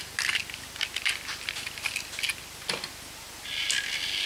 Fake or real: real